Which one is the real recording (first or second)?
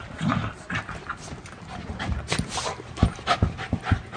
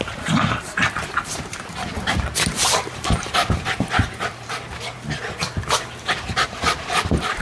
first